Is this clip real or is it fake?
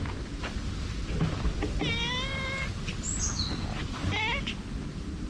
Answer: real